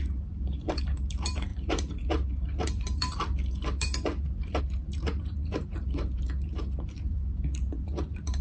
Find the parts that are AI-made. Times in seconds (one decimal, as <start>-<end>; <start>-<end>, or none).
0.0-8.4